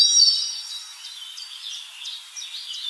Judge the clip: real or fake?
real